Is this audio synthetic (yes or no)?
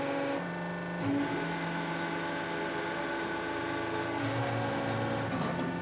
no